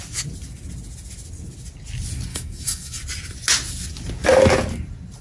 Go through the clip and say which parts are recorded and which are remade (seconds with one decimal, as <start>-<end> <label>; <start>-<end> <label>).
0.0-2.3 recorded; 2.3-3.0 remade; 3.0-5.2 recorded